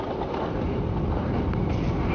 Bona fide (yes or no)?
yes